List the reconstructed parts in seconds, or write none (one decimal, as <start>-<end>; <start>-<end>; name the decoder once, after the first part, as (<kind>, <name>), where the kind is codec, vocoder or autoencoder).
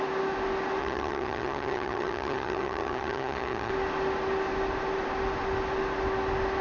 0.8-3.7 (vocoder, HiFi-GAN)